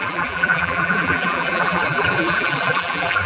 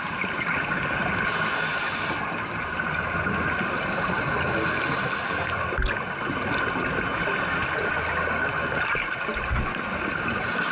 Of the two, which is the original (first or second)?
second